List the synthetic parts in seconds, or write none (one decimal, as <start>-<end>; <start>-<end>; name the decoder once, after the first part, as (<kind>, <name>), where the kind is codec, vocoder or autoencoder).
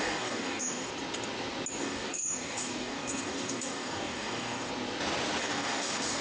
0.0-0.9 (codec, DAC); 1.8-4.7; 5.4-6.2